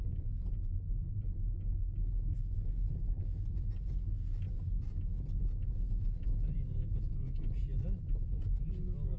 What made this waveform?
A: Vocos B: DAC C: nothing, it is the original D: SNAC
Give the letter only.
C